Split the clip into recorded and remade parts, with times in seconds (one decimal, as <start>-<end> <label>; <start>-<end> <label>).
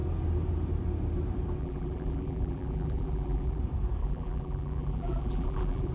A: 0.0-1.6 recorded; 1.6-3.6 remade; 3.6-4.0 recorded; 4.0-5.9 remade